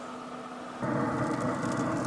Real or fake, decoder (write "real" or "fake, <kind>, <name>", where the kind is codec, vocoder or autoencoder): real